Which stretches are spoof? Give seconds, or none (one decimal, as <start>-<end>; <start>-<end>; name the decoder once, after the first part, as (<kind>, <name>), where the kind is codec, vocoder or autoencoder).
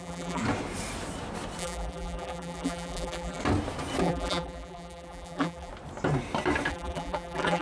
0.0-0.4 (vocoder, BigVGAN v2); 1.6-3.4; 4.0-5.7; 6.7-7.6